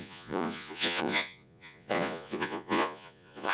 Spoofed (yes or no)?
yes